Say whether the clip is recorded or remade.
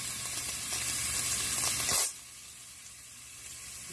recorded